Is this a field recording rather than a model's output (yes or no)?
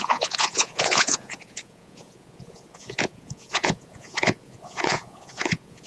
no